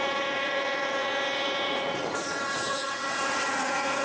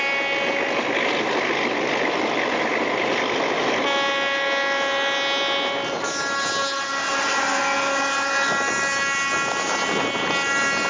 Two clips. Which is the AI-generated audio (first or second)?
first